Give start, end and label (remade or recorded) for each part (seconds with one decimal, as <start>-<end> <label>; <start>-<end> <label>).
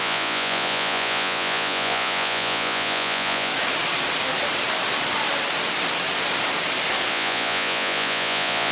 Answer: 0.0-3.5 remade; 3.5-7.1 recorded; 7.1-8.7 remade